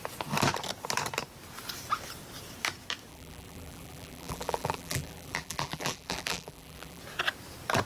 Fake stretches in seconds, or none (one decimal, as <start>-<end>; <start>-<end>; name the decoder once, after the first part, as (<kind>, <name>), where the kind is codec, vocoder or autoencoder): 3.1-7.0 (vocoder, BigVGAN v2)